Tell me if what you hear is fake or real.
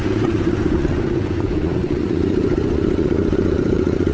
fake